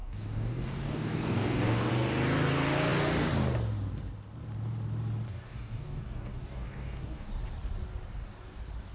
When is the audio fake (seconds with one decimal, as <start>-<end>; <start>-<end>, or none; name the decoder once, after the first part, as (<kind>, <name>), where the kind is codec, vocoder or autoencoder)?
0.0-1.9 (codec, DAC); 5.3-7.3